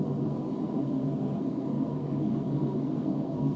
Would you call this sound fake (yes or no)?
yes